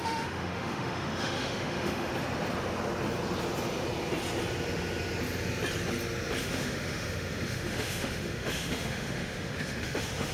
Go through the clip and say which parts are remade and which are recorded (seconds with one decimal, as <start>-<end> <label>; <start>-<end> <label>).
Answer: 0.0-2.1 remade; 2.1-6.4 recorded; 6.4-10.3 remade